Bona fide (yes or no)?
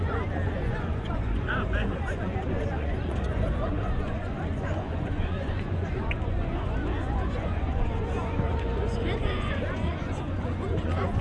no